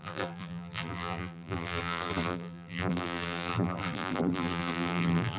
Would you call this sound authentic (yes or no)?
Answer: no